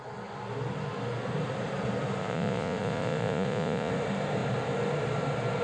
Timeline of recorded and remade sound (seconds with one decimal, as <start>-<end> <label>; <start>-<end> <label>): 0.0-2.2 recorded; 2.2-3.9 remade; 3.9-5.6 recorded